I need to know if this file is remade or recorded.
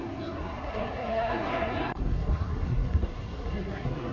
remade